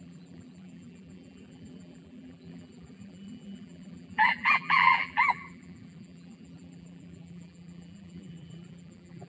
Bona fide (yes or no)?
no